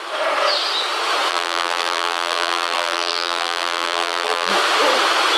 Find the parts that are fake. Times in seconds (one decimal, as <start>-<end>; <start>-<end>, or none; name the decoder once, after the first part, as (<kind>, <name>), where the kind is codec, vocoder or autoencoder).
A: 1.3-4.5 (vocoder, BigVGAN v2)